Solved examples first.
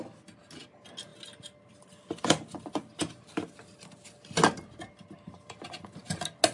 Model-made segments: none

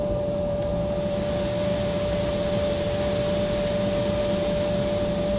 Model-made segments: none

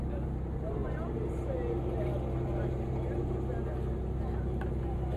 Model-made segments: none